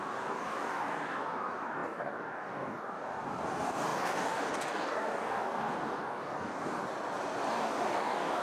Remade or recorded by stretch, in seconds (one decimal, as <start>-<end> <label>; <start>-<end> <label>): 0.0-6.8 remade; 6.8-7.5 recorded; 7.5-8.4 remade